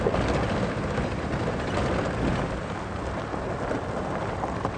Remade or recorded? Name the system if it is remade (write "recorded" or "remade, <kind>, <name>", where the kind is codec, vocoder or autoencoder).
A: recorded